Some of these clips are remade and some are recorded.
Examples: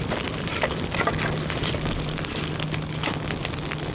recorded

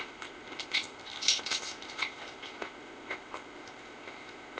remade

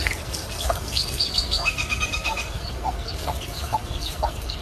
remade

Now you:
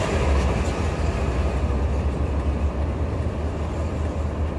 recorded